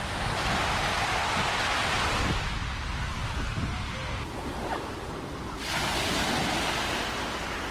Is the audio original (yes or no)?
yes